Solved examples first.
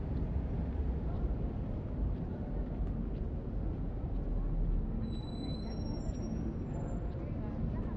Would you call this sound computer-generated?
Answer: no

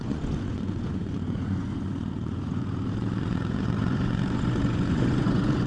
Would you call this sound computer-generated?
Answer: yes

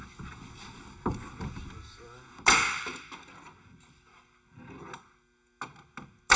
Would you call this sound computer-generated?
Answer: no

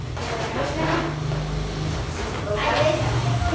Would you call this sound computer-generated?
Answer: no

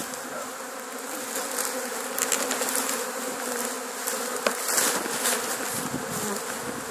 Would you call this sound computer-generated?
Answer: no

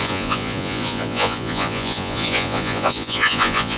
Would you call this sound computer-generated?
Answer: yes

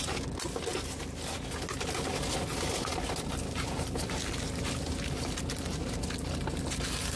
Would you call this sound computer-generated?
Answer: no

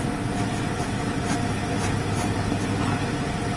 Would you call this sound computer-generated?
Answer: no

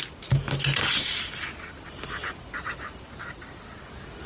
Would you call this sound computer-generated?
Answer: no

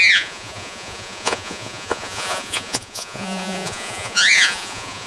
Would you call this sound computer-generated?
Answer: yes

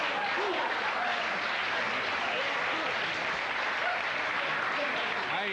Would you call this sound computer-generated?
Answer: no